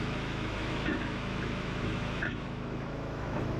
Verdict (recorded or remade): remade